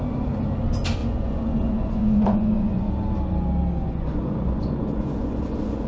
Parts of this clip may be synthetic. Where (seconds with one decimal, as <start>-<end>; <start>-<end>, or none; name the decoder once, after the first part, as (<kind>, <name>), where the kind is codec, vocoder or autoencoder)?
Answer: 1.0-2.9 (vocoder, Vocos); 3.8-5.9